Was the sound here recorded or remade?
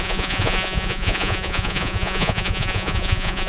remade